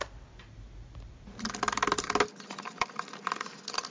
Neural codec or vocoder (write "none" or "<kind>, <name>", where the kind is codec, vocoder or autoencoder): none